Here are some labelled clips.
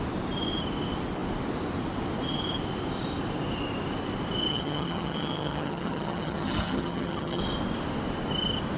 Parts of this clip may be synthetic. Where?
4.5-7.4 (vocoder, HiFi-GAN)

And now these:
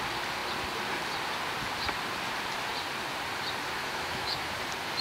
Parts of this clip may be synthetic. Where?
3.8-4.5 (autoencoder, DAC-VAE)

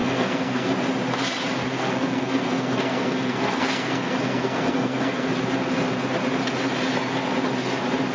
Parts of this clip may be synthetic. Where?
0.0-0.7 (codec, SNAC); 1.6-5.3

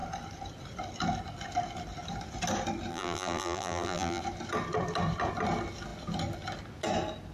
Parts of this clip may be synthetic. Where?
2.9-4.2 (vocoder, BigVGAN v2)

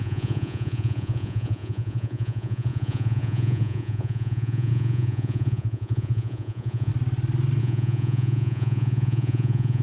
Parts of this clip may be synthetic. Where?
0.0-6.9 (vocoder, Vocos); 7.6-9.8

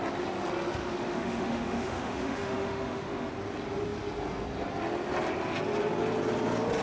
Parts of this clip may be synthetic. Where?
0.8-3.3 (autoencoder, DAC-VAE)

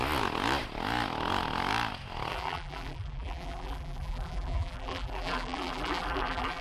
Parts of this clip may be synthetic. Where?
2.3-6.6 (vocoder, BigVGAN v2)

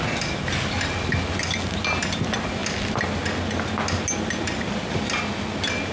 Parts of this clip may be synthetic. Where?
none